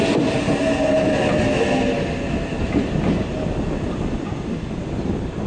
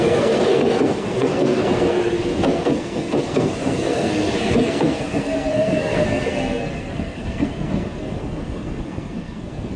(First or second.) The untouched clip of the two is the first